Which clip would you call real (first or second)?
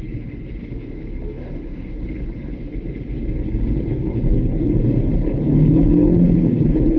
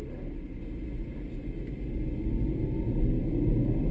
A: second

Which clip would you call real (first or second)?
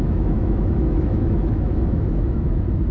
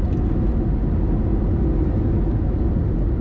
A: second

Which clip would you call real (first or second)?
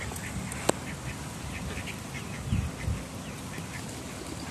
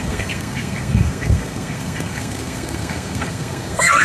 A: first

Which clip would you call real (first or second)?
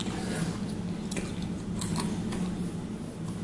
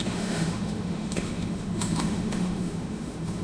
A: first